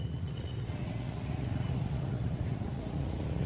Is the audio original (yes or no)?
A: no